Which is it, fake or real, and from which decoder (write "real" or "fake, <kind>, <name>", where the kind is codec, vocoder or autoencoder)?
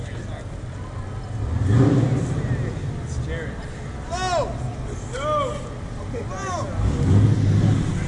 real